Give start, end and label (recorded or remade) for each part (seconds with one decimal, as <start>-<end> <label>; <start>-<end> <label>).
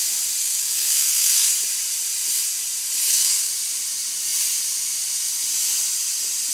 0.0-0.4 recorded; 0.4-1.5 remade; 1.5-3.0 recorded; 3.0-3.5 remade; 3.5-6.5 recorded